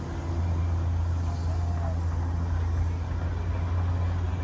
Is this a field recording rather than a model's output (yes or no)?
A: yes